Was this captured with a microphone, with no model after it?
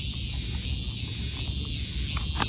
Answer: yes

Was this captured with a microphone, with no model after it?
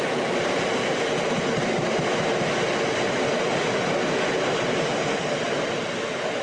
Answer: yes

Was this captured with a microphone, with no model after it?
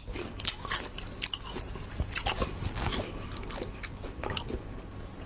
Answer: yes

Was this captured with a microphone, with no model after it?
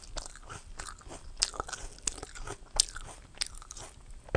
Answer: yes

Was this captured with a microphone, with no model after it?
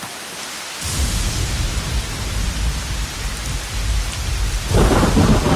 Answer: yes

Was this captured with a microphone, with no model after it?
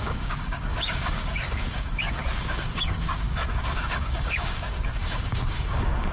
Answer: no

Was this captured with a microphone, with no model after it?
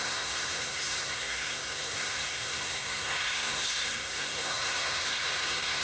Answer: no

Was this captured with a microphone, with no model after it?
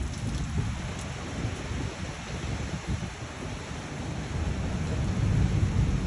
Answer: yes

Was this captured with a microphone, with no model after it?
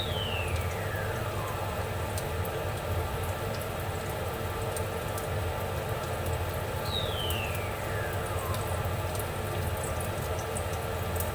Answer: yes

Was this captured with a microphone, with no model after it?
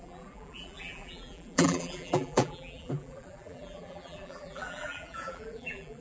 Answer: no